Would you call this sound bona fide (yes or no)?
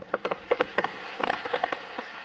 no